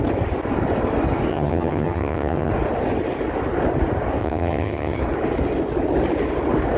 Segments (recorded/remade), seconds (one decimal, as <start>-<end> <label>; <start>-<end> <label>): 0.0-1.3 recorded; 1.3-2.5 remade; 2.5-4.2 recorded; 4.2-5.0 remade; 5.0-6.8 recorded

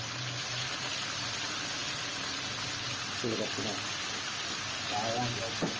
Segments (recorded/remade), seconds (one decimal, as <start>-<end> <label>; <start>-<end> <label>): 0.0-5.8 recorded

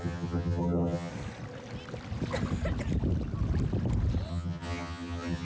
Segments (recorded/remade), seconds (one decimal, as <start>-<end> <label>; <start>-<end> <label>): 0.0-1.1 remade; 1.1-4.3 recorded; 4.3-5.4 remade

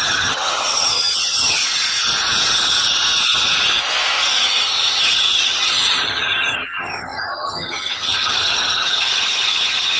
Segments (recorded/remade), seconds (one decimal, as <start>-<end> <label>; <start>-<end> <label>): 0.0-1.6 remade; 1.6-4.4 recorded; 4.4-10.0 remade

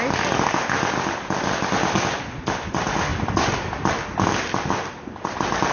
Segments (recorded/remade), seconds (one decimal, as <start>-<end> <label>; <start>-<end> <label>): 0.0-5.7 recorded

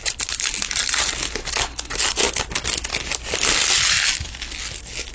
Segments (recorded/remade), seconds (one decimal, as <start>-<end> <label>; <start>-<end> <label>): 0.0-5.1 recorded

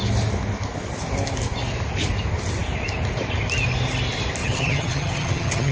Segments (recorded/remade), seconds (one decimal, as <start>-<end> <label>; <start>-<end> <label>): 0.0-4.4 recorded; 4.4-5.7 remade